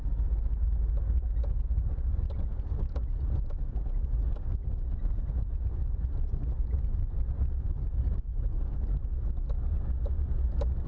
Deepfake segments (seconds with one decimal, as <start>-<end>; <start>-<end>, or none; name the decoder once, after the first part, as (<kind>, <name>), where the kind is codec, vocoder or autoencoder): 1.5-5.9 (vocoder, Vocos)